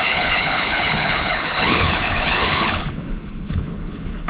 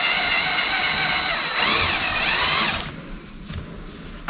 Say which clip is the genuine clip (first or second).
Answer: second